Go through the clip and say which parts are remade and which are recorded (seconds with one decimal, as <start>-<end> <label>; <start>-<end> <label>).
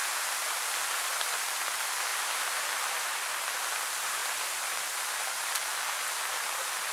0.0-0.7 remade; 0.7-2.1 recorded; 2.1-3.2 remade; 3.2-4.2 recorded; 4.2-5.7 remade; 5.7-6.9 recorded